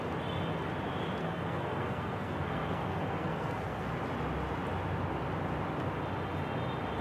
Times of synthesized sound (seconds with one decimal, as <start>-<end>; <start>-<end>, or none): 1.2-3.9